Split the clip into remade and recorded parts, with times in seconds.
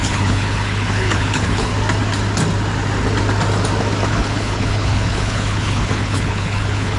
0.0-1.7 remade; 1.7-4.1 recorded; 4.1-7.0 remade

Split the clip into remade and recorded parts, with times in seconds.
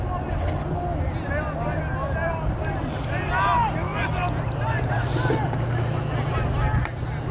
0.0-7.3 recorded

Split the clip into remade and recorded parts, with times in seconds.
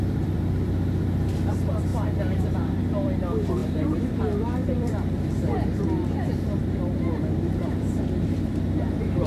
0.0-9.3 remade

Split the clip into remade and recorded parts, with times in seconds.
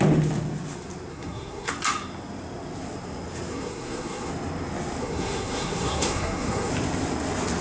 0.0-1.1 recorded; 1.1-1.7 remade; 1.7-3.5 recorded; 3.5-4.3 remade; 4.3-5.0 recorded; 5.0-6.7 remade; 6.7-7.6 recorded